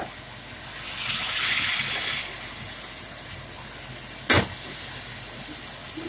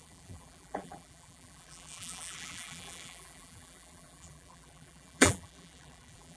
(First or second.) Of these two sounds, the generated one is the second